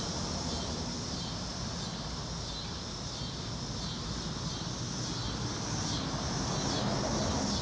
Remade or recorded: recorded